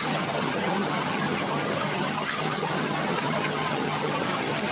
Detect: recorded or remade remade